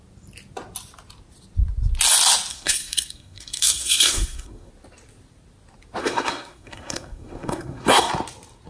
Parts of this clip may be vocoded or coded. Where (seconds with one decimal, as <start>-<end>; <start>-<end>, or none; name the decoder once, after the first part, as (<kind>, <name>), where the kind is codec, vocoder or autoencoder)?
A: 2.5-4.7 (codec, SNAC); 6.0-8.1